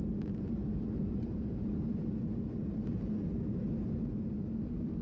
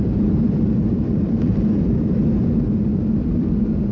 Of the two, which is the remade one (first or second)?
second